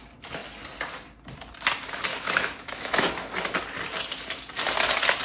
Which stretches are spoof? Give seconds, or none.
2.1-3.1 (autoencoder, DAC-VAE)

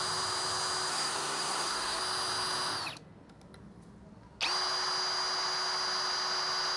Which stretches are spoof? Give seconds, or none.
0.9-2.0 (codec, SNAC)

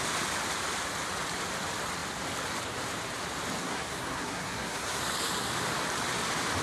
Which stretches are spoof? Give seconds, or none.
3.6-5.0 (codec, SNAC)